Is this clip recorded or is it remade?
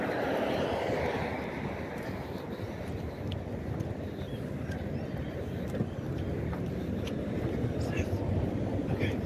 recorded